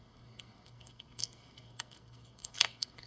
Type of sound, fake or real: fake